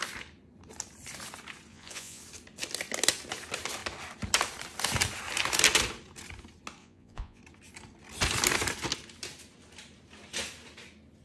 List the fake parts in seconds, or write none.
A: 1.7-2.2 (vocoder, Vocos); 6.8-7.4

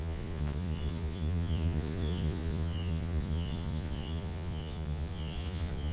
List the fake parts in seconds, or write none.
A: 0.0-5.9 (vocoder, Vocos)

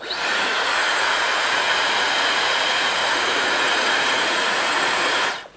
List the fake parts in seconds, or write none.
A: 0.0-5.6 (vocoder, Vocos)